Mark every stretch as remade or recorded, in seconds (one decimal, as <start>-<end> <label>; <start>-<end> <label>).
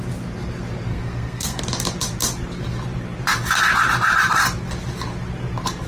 0.0-0.9 recorded; 0.9-1.6 remade; 1.6-5.9 recorded